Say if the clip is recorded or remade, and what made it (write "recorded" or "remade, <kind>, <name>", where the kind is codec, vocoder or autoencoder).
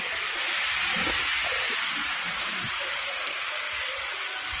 remade, vocoder, BigVGAN v2